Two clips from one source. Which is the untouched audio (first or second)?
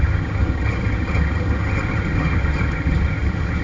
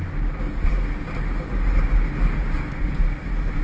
second